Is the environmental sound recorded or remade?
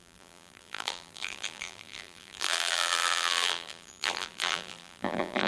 remade